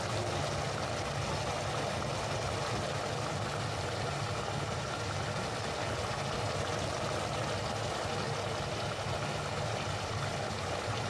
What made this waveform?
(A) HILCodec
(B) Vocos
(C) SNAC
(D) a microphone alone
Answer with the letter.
D